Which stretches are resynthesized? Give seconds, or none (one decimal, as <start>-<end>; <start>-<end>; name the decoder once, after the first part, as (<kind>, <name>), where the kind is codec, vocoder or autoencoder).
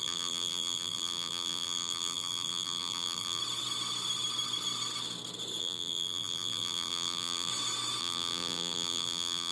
0.0-3.4 (vocoder, BigVGAN v2); 5.6-7.5; 8.0-9.5